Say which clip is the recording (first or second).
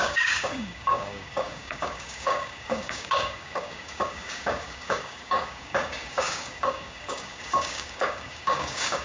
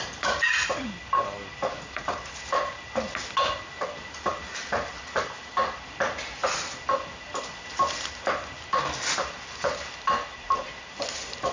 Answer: second